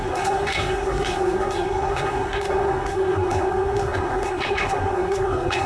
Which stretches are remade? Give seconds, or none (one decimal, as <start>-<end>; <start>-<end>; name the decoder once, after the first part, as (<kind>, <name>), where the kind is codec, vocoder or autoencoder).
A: 0.0-5.7 (codec, SNAC)